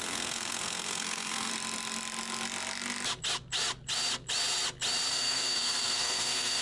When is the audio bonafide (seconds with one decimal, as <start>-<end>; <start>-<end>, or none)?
1.5-5.1